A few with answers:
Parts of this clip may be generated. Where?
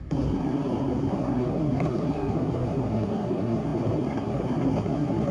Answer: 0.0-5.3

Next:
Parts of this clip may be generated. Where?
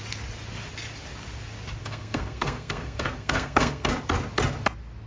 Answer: 1.8-3.9